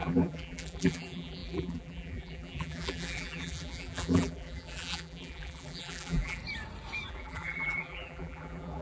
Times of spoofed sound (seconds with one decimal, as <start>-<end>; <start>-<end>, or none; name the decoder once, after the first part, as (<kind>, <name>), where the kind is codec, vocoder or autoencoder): 0.0-6.4 (vocoder, BigVGAN v2); 7.1-8.8